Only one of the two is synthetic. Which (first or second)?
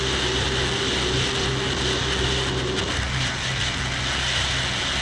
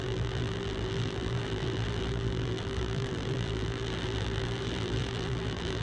second